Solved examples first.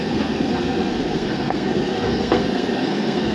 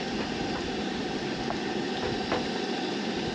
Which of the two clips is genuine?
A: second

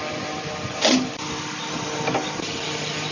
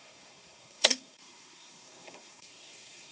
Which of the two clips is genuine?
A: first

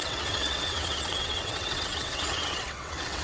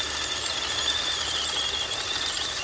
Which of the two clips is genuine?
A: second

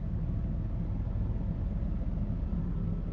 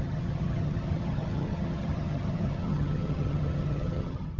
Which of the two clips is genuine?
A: first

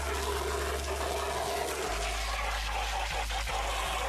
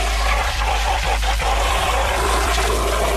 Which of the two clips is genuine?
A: first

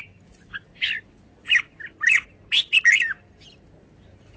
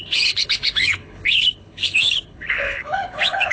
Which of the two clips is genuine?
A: first